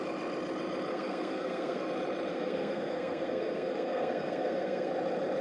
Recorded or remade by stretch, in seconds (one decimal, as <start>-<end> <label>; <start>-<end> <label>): 0.0-0.9 recorded; 0.9-1.9 remade; 1.9-2.3 recorded; 2.3-4.9 remade; 4.9-5.4 recorded